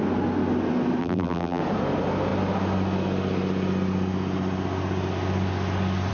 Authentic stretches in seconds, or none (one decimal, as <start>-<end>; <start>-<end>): 0.0-1.0; 1.6-6.1